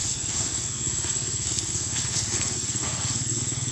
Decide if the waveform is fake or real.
fake